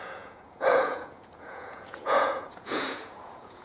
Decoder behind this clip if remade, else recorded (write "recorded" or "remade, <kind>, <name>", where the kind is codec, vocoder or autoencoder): remade, vocoder, Vocos